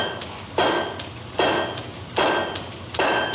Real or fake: real